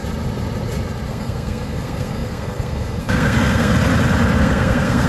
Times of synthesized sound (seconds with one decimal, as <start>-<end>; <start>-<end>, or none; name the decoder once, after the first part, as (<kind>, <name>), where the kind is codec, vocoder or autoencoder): 1.1-3.7 (codec, SNAC); 4.4-5.1